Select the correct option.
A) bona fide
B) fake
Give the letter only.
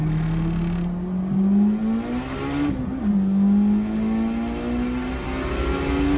A